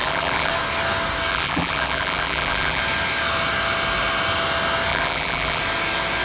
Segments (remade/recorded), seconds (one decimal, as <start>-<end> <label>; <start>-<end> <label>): 0.0-0.5 remade; 0.5-1.3 recorded; 1.3-2.8 remade; 2.8-4.9 recorded; 4.9-5.6 remade; 5.6-6.2 recorded

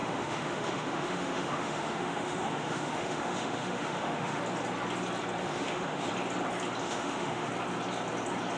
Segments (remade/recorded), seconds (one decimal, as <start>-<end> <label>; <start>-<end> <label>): 0.0-4.4 remade; 4.4-5.4 recorded; 5.4-6.1 remade; 6.1-6.8 recorded; 6.8-7.5 remade; 7.5-8.6 recorded

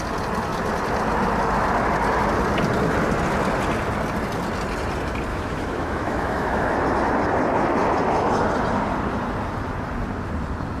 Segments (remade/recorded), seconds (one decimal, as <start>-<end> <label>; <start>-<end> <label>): 0.0-5.3 recorded; 5.3-6.8 remade; 6.8-10.8 recorded

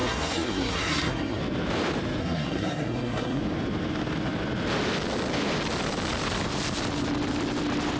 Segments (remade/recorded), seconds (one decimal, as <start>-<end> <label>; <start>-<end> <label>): 0.0-1.4 remade; 1.4-2.2 recorded; 2.2-3.4 remade; 3.4-8.0 recorded

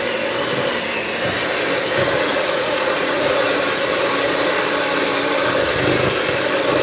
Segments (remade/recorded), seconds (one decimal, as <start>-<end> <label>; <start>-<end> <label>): 0.0-2.3 recorded; 2.3-3.5 remade; 3.5-6.8 recorded

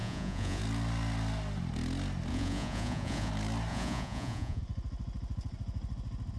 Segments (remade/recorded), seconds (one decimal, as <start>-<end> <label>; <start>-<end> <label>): 0.0-0.6 remade; 0.6-2.3 recorded; 2.3-3.3 remade; 3.3-3.7 recorded; 3.7-4.6 remade; 4.6-6.4 recorded